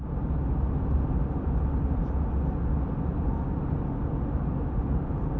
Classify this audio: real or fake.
real